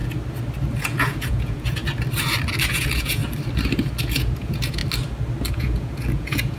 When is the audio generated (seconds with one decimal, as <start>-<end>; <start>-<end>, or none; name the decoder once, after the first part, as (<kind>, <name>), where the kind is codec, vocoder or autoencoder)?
0.8-1.8 (vocoder, Vocos); 2.7-3.2; 4.0-4.8; 5.5-6.6